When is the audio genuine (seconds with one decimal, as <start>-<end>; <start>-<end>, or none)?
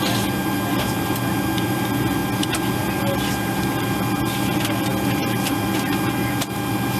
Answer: 0.0-7.0